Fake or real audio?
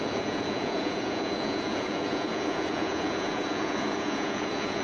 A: fake